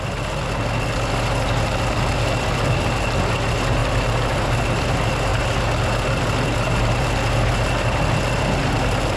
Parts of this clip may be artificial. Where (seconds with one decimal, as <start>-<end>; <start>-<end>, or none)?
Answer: none